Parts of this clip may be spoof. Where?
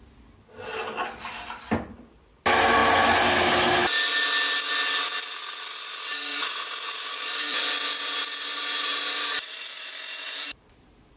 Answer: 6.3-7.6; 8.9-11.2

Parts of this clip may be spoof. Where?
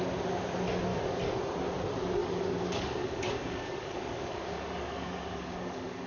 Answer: 0.9-1.4; 2.2-6.1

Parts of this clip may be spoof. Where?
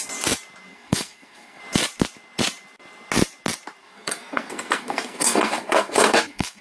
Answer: 0.7-1.6; 3.8-6.6